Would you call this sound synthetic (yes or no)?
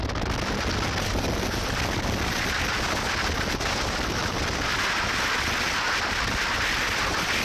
no